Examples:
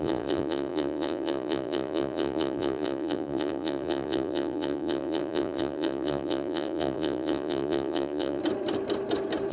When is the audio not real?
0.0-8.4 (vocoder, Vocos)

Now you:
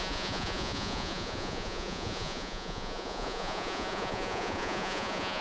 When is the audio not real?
0.0-5.4 (vocoder, Vocos)

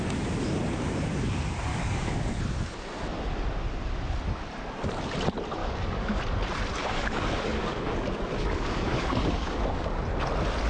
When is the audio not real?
1.7-2.4 (codec, DAC); 5.6-6.2; 6.8-10.0

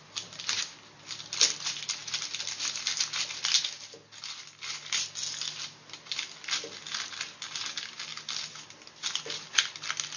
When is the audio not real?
none

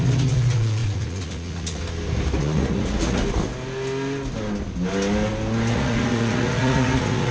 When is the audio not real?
0.0-1.8 (vocoder, Vocos); 2.4-3.2; 5.7-7.3

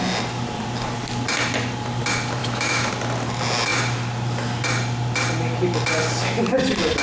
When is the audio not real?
2.4-2.9 (autoencoder, DAC-VAE)

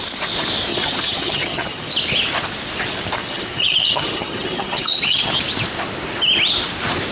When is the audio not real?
0.7-1.9 (vocoder, HiFi-GAN); 3.2-5.3

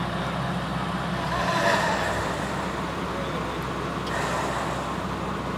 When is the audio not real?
none